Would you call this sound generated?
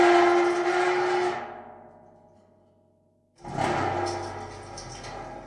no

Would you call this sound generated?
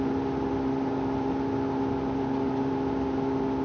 no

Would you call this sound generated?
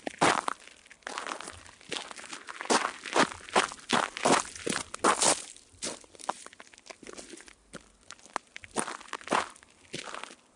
no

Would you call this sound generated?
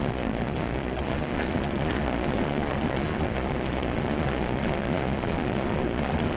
yes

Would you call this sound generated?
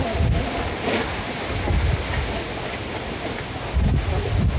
no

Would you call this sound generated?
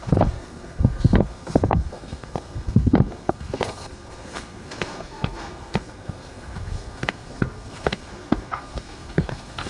yes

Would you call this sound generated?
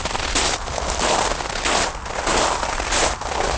no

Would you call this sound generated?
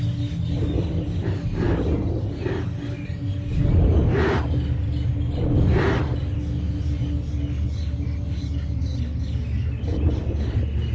no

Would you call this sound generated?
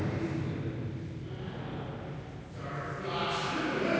no